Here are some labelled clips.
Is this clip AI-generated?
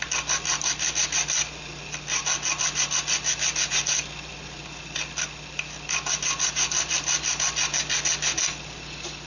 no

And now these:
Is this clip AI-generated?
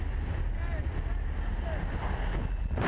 no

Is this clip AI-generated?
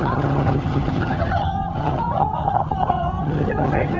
yes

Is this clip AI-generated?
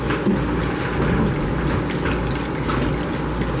no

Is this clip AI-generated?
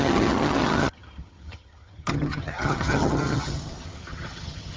yes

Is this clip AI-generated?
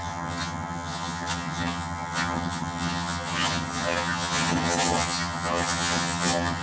yes